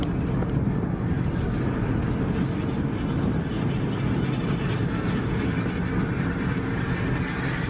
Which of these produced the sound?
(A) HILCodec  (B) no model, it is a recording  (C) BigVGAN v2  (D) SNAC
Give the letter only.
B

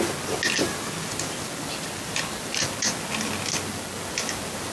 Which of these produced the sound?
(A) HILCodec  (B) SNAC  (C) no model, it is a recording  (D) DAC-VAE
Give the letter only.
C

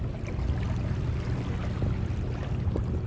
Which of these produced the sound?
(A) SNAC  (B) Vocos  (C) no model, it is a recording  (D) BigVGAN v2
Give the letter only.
C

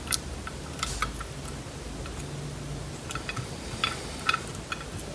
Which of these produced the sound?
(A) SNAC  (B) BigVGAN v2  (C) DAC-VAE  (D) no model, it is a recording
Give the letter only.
D